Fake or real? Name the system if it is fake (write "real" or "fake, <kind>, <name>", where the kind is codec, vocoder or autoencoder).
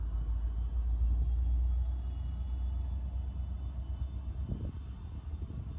real